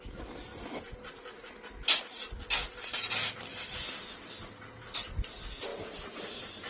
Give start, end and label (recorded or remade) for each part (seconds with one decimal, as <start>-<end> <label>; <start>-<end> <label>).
0.0-6.7 recorded